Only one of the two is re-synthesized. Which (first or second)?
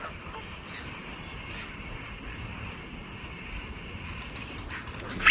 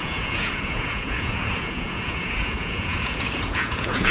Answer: second